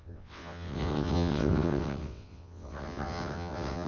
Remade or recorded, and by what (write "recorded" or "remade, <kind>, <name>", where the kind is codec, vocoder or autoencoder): remade, vocoder, WaveNeXt